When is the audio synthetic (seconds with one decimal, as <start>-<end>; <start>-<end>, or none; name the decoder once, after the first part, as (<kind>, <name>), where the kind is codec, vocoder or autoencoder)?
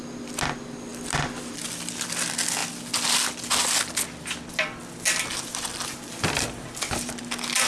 none